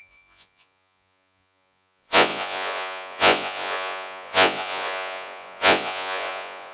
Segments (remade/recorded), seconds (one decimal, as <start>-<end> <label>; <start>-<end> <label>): 0.0-6.7 remade